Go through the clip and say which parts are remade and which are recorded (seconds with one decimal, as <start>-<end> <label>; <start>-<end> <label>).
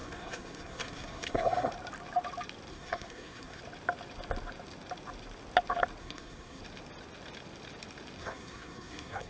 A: 0.0-1.7 remade; 1.7-2.7 recorded; 2.7-3.6 remade; 3.6-6.0 recorded; 6.0-6.6 remade; 6.6-8.2 recorded; 8.2-9.3 remade